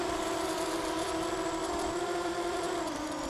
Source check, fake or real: fake